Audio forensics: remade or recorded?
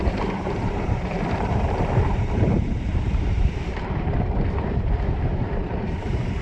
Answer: remade